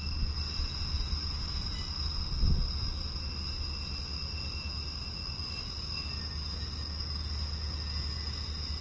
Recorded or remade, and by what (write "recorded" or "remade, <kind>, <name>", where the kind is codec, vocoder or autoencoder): recorded